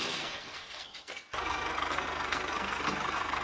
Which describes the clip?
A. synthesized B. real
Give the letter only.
A